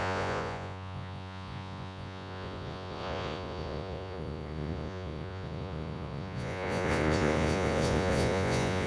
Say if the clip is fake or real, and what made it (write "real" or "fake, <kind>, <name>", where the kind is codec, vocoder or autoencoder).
fake, vocoder, Vocos